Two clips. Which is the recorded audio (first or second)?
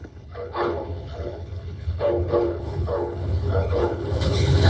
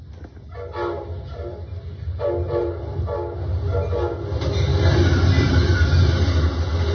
second